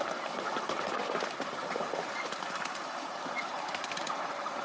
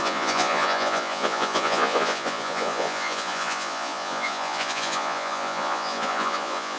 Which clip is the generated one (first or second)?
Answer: second